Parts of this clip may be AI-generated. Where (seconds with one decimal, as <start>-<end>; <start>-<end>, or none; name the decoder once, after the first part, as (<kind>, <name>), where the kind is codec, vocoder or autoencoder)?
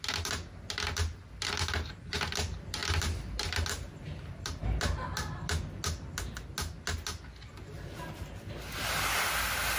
none